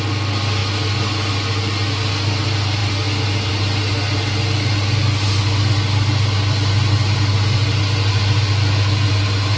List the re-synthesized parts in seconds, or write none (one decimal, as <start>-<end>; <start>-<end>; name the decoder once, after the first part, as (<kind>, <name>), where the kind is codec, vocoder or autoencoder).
none